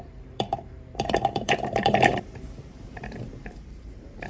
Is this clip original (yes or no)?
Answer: no